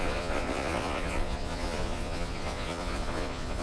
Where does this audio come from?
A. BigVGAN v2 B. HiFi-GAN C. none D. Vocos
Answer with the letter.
D